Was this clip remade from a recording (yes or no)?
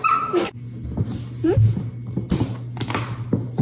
no